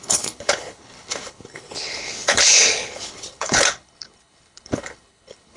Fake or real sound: fake